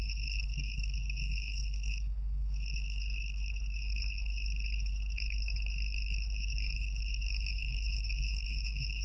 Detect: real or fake fake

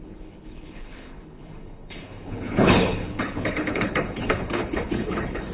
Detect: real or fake fake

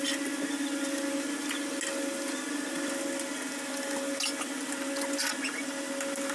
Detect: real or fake real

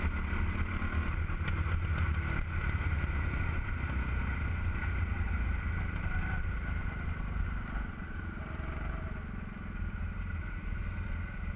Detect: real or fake real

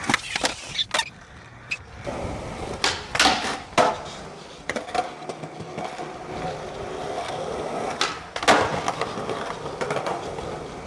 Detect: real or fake real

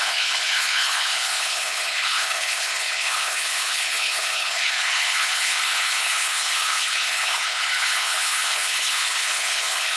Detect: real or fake fake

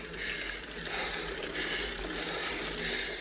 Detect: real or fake real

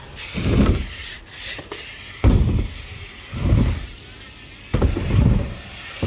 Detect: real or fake real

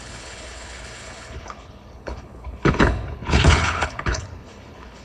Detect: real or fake fake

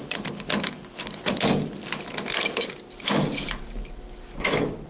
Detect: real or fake real